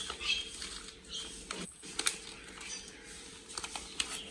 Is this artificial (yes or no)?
no